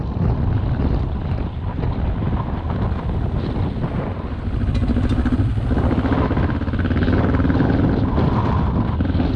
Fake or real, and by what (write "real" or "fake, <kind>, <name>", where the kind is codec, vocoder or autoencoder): real